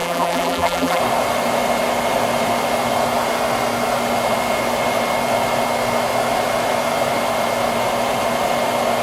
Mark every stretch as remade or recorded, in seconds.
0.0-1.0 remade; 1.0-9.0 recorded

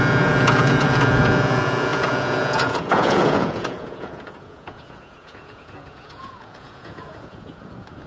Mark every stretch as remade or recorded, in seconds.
0.0-8.1 remade

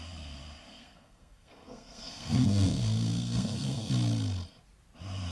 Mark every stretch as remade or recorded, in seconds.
0.0-0.7 recorded; 0.7-3.9 remade; 3.9-5.3 recorded

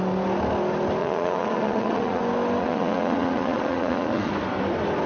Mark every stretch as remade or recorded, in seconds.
0.0-1.0 recorded; 1.0-2.2 remade; 2.2-2.6 recorded; 2.6-4.3 remade; 4.3-5.1 recorded

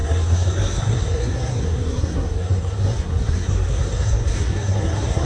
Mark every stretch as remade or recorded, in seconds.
0.0-5.3 remade